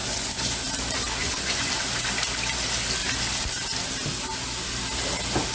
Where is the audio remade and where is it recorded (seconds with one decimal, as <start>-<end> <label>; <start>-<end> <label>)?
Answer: 0.0-0.6 remade; 0.6-1.2 recorded; 1.2-1.7 remade; 1.7-5.5 recorded